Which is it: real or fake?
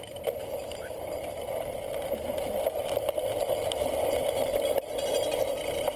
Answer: real